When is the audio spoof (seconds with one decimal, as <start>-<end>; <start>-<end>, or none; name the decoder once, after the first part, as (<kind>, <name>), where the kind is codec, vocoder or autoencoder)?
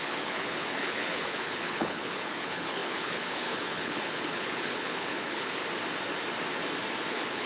0.0-5.6 (codec, HILCodec); 7.1-7.5